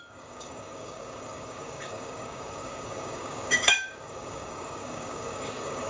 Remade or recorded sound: remade